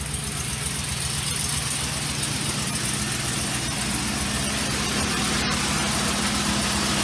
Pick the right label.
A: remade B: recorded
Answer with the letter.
B